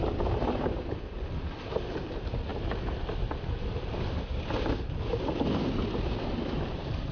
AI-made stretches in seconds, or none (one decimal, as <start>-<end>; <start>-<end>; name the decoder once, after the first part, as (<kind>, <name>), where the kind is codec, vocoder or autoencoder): none

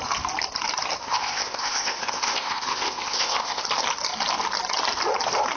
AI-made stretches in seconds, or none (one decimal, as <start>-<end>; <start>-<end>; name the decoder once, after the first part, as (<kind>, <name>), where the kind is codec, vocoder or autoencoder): 1.0-3.6 (codec, ZipCodec)

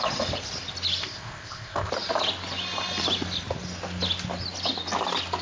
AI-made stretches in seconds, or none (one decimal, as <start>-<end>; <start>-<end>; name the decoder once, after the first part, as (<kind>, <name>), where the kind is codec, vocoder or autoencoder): 1.0-1.9 (codec, ZipCodec)

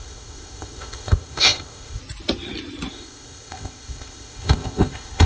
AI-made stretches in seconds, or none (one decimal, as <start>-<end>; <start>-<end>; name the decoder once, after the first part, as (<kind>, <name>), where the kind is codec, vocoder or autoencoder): 0.0-2.0 (codec, ZipCodec); 2.9-5.3

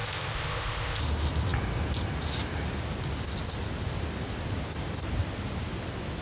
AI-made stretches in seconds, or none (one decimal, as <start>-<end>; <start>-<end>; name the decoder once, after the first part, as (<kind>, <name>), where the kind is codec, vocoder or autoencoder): 0.0-1.0 (codec, ZipCodec)

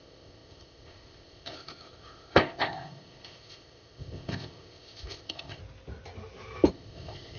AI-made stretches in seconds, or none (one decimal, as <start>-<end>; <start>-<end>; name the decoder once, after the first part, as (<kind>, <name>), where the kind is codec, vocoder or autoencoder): 0.0-5.6 (codec, ZipCodec); 6.7-7.4

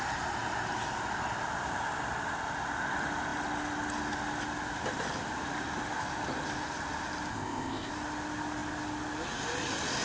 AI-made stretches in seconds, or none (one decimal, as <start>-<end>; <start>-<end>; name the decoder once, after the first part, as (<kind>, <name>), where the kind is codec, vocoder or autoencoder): 7.3-7.9 (codec, ZipCodec)